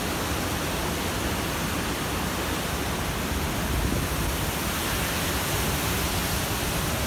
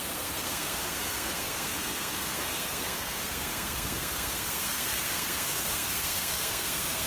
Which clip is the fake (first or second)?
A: second